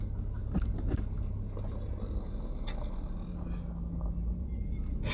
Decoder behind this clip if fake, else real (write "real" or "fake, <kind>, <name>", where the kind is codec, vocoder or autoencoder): real